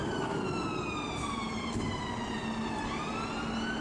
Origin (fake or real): real